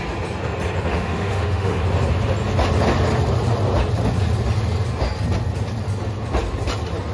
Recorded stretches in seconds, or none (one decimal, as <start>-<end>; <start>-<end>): 0.0-0.9; 1.8-7.1